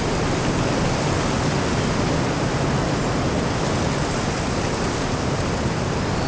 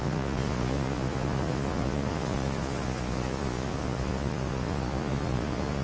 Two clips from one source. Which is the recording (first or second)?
first